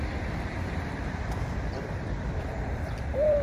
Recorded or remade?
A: remade